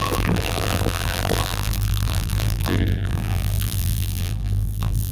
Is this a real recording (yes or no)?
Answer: no